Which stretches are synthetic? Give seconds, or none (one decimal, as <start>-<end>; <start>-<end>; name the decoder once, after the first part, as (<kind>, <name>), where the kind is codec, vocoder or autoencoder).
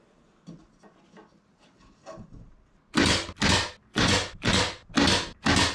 3.9-4.5 (vocoder, Vocos)